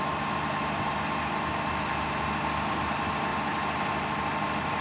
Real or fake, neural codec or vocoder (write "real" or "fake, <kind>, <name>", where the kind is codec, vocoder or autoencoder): real